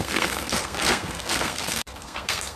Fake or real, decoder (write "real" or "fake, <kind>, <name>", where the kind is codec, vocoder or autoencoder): fake, codec, SNAC